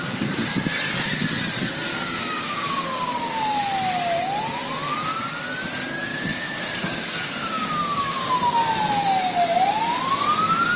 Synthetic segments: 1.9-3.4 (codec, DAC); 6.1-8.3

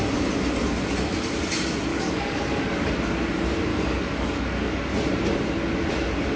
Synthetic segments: 1.9-2.9 (codec, DAC); 3.7-4.9

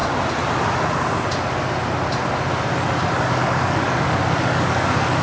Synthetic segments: 3.1-5.2 (codec, DAC)

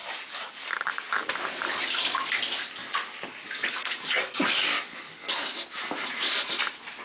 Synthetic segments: 0.0-1.3 (codec, DAC); 2.8-5.5